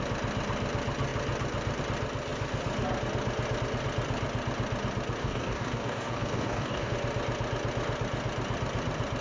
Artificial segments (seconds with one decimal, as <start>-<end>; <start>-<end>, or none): 5.2-6.9